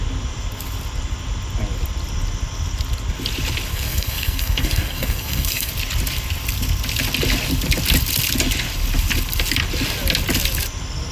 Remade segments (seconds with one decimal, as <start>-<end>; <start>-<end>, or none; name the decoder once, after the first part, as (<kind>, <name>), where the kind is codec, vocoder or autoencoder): 3.7-5.7 (codec, SNAC)